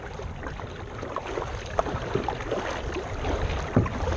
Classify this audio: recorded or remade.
recorded